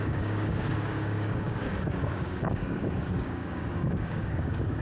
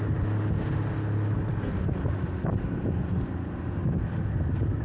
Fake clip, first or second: first